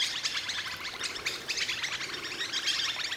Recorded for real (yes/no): no